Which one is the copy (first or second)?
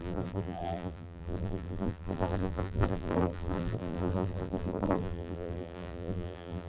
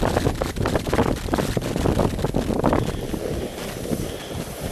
first